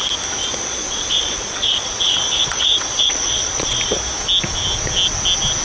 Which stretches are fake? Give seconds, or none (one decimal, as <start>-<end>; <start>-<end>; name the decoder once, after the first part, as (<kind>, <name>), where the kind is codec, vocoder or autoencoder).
0.4-3.8 (vocoder, Vocos)